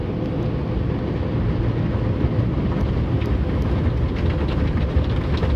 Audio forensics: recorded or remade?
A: recorded